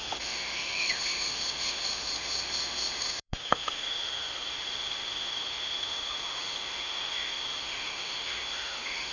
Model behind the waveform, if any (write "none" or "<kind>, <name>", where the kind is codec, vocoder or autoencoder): autoencoder, DAC-VAE